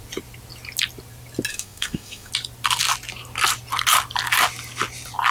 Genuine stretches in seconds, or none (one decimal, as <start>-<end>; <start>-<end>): 0.0-1.5; 2.3-5.3